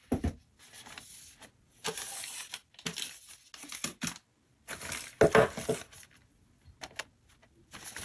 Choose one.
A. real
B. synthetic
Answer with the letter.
A